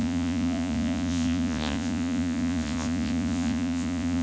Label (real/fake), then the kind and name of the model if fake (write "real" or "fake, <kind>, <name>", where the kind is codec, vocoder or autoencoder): fake, vocoder, Vocos